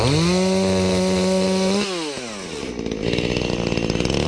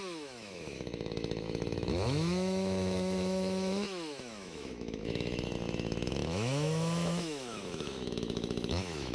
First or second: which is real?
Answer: first